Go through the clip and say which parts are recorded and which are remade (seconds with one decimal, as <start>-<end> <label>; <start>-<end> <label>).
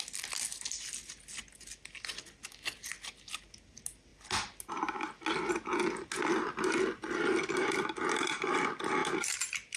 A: 0.0-9.8 recorded